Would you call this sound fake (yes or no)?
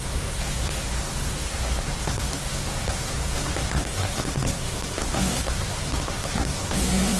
yes